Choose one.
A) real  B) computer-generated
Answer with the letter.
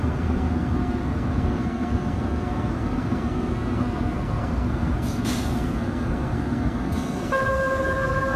B